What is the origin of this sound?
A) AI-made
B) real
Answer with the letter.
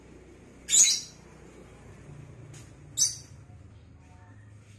B